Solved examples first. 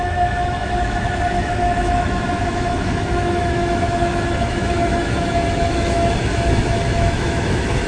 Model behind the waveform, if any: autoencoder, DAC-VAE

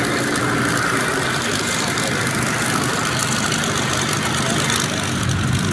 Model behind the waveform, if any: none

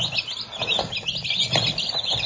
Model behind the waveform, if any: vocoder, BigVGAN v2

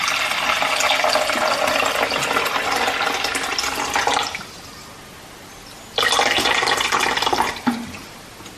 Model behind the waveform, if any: none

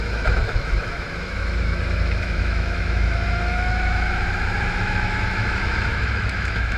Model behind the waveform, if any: autoencoder, DAC-VAE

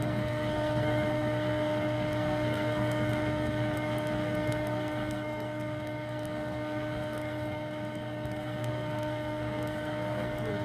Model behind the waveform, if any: codec, SNAC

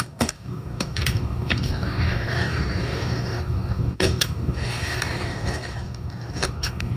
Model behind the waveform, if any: codec, DAC